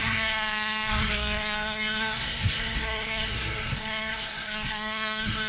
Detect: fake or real fake